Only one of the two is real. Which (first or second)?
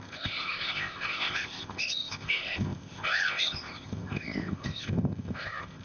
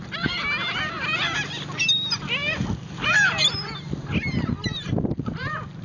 second